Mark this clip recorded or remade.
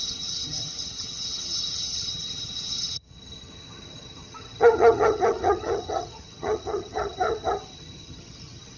remade